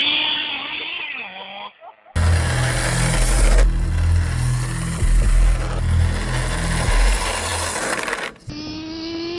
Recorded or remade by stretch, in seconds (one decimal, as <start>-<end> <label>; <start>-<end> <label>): 0.0-0.5 remade; 0.5-9.4 recorded